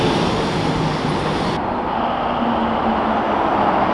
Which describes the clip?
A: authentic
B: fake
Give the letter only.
A